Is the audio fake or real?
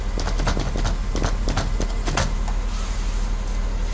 real